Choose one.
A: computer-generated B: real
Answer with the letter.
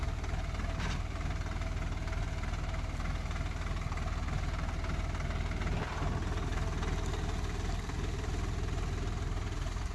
B